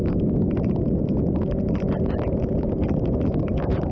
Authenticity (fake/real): real